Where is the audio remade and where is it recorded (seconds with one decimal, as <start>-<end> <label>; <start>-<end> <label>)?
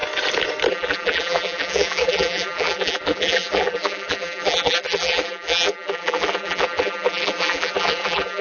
0.0-0.7 recorded; 0.7-8.4 remade